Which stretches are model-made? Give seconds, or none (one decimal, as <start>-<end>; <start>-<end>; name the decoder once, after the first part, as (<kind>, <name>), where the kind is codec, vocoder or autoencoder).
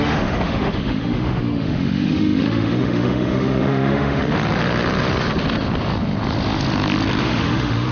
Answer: 0.0-4.2 (autoencoder, DAC-VAE); 7.2-7.9